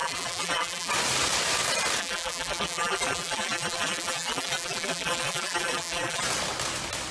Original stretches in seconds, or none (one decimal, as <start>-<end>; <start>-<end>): 0.9-2.0; 6.2-7.1